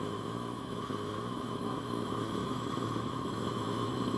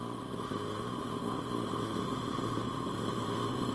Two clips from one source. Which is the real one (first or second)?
second